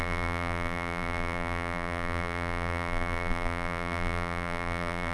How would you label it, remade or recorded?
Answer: remade